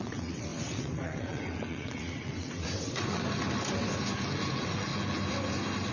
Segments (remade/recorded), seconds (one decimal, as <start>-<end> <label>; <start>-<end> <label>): 0.0-3.2 remade; 3.2-4.5 recorded; 4.5-4.9 remade; 4.9-5.9 recorded

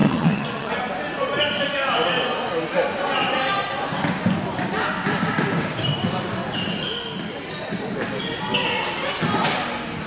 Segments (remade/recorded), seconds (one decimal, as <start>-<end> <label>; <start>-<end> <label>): 0.0-0.7 remade; 0.7-10.1 recorded